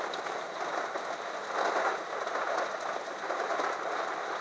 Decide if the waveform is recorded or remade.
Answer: recorded